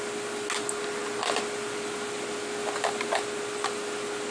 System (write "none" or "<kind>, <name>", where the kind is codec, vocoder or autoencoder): none